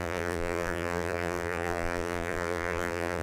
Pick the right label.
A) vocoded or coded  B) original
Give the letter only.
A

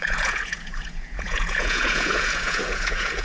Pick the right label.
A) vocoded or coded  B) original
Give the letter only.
A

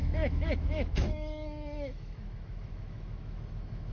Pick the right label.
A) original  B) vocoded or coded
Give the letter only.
B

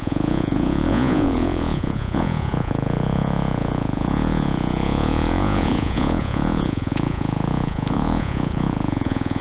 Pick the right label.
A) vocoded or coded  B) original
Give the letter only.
A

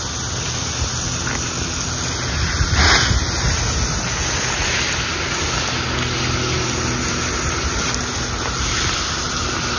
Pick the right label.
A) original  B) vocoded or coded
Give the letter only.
A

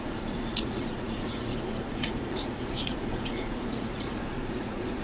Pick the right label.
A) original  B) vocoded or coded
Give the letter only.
B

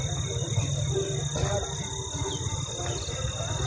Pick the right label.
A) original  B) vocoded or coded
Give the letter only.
A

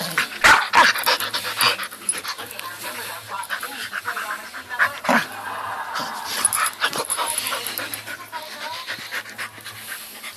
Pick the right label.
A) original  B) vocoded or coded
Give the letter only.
A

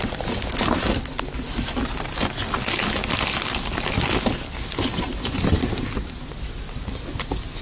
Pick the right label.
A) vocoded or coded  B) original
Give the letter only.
B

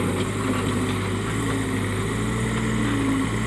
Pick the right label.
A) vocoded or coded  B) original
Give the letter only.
B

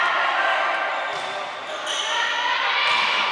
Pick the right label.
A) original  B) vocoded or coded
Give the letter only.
A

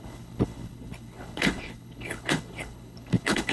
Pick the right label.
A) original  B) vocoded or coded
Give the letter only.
B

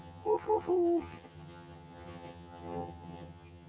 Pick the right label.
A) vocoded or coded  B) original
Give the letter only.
A